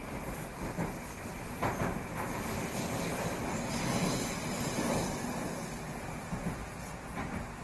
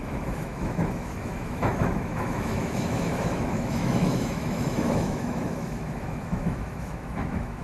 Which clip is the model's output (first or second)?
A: second